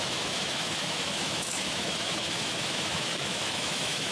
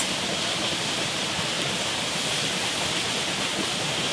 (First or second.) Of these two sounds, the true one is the second